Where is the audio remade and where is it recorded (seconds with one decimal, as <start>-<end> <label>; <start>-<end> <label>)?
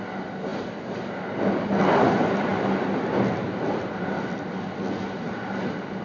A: 0.0-6.0 recorded